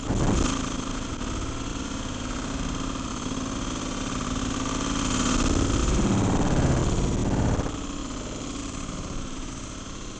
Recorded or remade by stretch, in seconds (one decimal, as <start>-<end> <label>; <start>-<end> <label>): 0.0-1.7 recorded; 1.7-3.1 remade; 3.1-5.8 recorded; 5.8-6.8 remade; 6.8-8.6 recorded; 8.6-10.2 remade